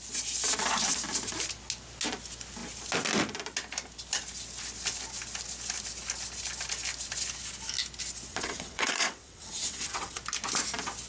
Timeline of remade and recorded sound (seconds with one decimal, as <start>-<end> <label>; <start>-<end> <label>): 0.0-8.3 recorded; 8.3-10.2 remade; 10.2-11.1 recorded